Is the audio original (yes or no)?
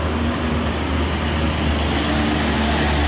yes